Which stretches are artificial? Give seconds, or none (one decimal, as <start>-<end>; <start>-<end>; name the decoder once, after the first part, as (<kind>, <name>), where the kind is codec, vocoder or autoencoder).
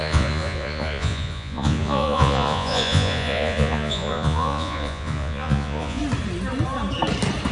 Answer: 0.0-6.0 (vocoder, Vocos)